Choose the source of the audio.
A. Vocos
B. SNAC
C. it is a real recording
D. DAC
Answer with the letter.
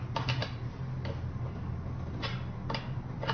C